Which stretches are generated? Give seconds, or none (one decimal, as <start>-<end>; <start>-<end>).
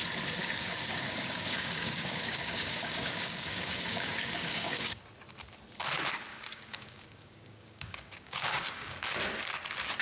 0.4-5.1; 6.3-9.0